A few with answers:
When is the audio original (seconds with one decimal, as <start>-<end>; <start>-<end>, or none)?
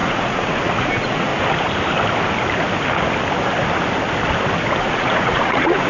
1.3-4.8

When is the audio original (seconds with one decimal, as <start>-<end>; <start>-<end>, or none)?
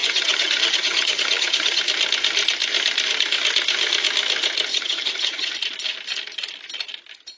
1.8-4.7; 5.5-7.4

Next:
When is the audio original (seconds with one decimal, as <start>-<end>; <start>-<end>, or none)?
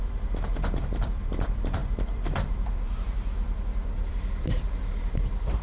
none